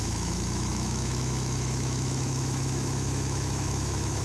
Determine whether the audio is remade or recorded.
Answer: remade